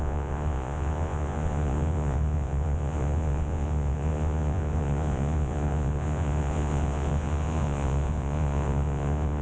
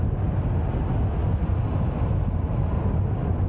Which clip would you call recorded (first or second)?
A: second